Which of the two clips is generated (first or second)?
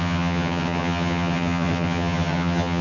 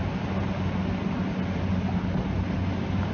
first